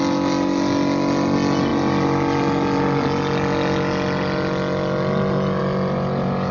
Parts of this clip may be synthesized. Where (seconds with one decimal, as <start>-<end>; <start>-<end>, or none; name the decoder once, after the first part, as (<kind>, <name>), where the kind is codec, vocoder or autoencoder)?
none

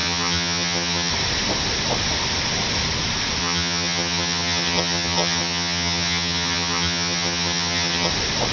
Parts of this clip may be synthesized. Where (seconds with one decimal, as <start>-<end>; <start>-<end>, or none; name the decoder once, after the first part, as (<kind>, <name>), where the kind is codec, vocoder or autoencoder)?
0.0-1.1 (vocoder, HiFi-GAN); 3.4-8.1

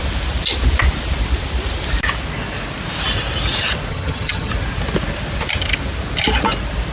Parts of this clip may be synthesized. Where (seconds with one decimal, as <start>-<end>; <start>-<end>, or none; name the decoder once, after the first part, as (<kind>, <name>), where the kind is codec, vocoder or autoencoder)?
3.9-4.5 (vocoder, HiFi-GAN)

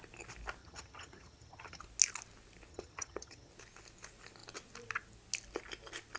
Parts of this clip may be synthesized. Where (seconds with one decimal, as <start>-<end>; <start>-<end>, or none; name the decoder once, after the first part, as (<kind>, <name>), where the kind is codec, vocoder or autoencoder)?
0.6-1.8 (vocoder, HiFi-GAN); 2.7-3.5